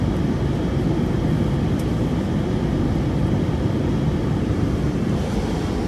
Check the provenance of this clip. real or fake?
real